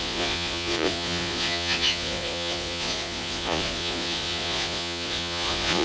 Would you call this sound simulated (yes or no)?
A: yes